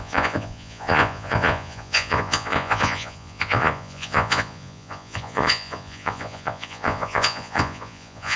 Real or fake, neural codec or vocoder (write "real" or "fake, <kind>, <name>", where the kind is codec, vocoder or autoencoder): fake, vocoder, Vocos